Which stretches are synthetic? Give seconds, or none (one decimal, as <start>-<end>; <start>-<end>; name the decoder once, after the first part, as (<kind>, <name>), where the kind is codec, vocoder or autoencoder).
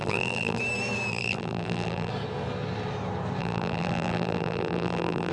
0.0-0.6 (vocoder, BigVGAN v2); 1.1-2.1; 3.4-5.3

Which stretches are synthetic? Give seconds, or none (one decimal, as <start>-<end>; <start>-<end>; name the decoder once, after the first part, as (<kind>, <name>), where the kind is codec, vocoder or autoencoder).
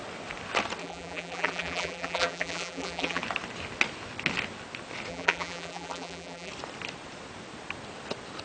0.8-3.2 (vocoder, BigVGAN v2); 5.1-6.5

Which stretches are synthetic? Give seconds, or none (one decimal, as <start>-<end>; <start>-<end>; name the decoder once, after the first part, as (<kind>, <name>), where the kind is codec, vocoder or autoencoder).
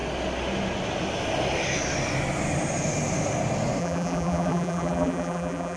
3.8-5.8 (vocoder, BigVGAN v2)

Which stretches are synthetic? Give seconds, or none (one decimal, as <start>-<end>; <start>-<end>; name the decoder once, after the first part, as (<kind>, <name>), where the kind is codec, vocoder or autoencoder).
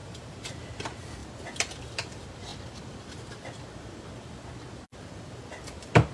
0.0-0.6 (vocoder, BigVGAN v2)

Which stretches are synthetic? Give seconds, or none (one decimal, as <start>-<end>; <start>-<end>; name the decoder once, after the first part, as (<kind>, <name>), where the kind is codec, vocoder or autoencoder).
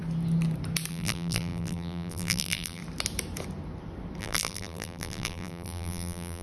0.9-2.8 (vocoder, BigVGAN v2); 4.2-6.4